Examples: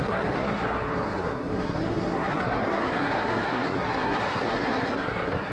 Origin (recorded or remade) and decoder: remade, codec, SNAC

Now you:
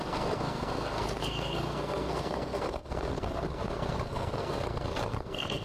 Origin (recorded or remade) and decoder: remade, codec, SNAC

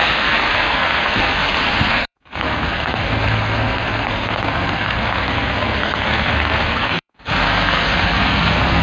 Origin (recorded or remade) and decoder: remade, codec, SNAC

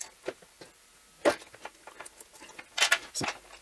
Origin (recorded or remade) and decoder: recorded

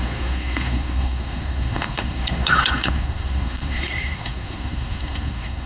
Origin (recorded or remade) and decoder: remade, codec, SNAC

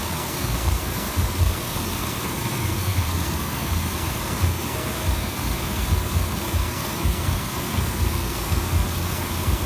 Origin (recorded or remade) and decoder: remade, codec, SNAC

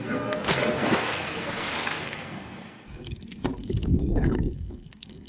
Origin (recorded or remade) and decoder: remade, codec, SNAC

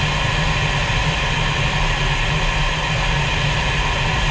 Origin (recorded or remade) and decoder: recorded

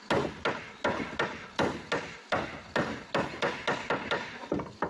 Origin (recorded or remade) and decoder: recorded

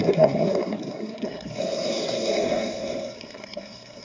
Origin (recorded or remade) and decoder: remade, codec, SNAC